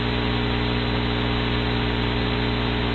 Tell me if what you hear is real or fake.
real